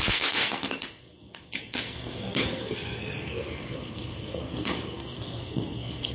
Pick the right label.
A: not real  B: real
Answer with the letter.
A